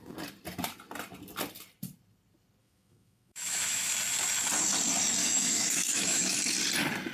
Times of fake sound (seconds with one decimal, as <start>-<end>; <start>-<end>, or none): 2.6-3.9; 5.2-6.4